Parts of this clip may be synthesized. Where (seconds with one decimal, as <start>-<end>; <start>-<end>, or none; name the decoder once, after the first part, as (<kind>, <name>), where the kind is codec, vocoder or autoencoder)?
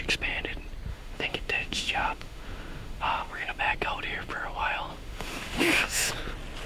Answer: 0.9-3.6 (autoencoder, DAC-VAE); 4.9-6.1